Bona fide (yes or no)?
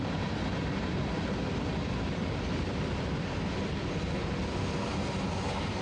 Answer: yes